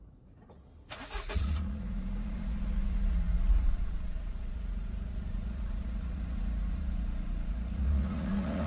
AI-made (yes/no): yes